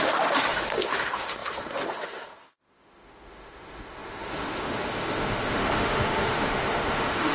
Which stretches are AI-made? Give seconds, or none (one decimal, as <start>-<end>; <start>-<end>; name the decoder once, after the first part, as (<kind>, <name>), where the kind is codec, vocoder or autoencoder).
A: 0.0-7.3 (autoencoder, DAC-VAE)